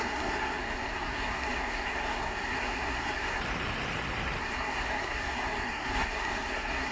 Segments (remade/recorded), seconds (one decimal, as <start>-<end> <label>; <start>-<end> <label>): 0.0-3.4 remade; 3.4-4.4 recorded; 4.4-6.9 remade